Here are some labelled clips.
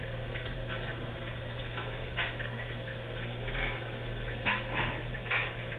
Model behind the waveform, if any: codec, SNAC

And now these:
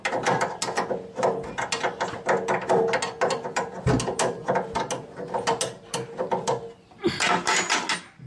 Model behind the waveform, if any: none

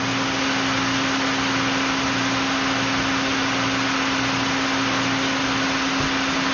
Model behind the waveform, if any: none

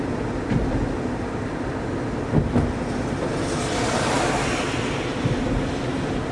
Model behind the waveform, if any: none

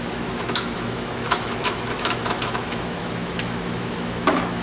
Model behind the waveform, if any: autoencoder, DAC-VAE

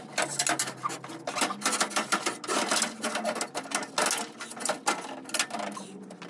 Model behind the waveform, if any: none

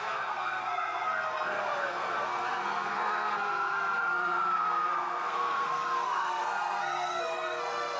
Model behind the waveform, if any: codec, SNAC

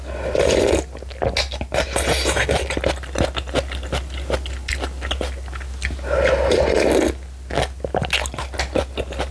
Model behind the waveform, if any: none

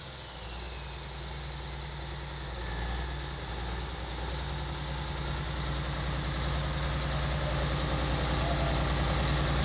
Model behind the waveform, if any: none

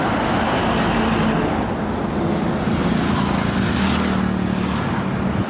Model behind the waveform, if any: none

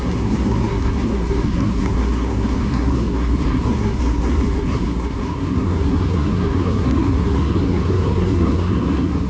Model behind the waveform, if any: codec, SNAC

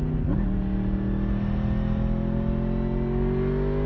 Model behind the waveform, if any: none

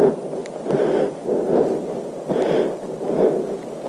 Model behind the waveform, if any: none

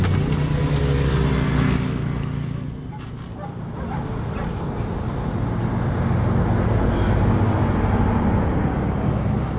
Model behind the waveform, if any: none